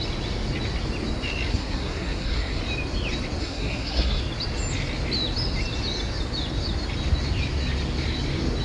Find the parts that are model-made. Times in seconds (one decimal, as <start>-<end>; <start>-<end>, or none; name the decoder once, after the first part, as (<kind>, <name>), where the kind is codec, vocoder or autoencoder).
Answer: 1.5-2.6 (codec, SNAC); 3.4-4.2